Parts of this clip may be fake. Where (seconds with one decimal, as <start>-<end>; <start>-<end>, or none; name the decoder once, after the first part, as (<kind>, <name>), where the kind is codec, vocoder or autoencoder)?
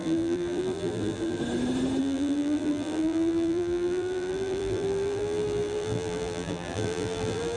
0.0-1.4 (vocoder, BigVGAN v2); 2.0-7.6